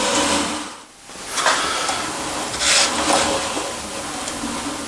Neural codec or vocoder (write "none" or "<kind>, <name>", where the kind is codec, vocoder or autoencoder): none